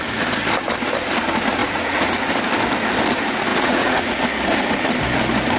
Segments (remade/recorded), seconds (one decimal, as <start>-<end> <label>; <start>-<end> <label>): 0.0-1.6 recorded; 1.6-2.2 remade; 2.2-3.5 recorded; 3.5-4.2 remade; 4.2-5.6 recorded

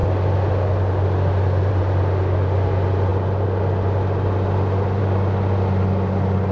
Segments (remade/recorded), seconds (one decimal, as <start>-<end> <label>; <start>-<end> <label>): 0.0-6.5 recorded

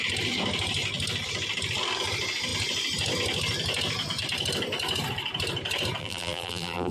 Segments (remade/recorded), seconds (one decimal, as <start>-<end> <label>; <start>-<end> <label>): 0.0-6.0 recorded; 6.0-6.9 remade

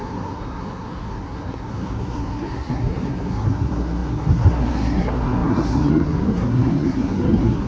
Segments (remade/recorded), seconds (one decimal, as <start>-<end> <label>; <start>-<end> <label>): 0.0-7.7 remade